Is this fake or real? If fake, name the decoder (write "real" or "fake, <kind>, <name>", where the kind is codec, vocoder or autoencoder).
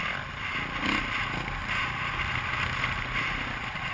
real